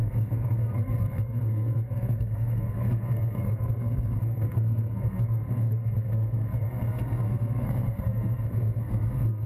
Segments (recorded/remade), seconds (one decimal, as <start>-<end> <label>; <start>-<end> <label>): 0.0-9.5 remade